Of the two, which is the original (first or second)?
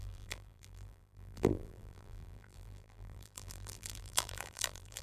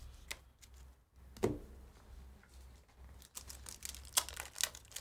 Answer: second